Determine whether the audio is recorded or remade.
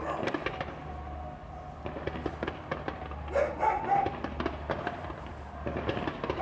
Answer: recorded